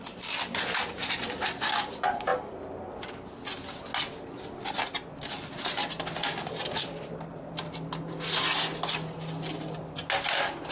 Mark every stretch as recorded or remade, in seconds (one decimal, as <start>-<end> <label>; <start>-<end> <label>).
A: 0.0-10.7 recorded